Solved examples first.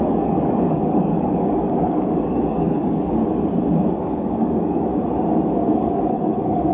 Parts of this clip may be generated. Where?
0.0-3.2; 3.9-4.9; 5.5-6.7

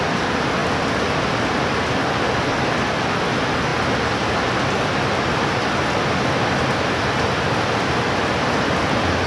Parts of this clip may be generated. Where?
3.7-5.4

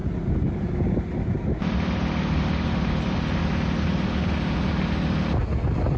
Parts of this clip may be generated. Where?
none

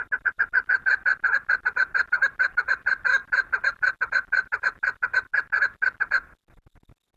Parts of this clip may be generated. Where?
none

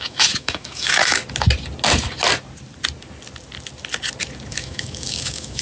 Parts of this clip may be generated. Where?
0.0-1.2; 4.5-5.6

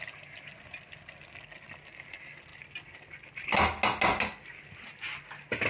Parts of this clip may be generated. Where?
none

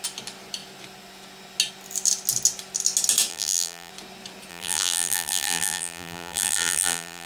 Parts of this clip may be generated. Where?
3.3-3.9; 4.5-7.3